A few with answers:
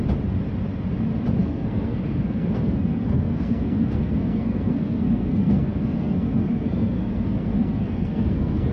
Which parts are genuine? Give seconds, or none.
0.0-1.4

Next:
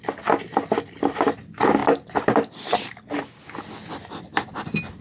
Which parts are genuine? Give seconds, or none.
0.0-5.0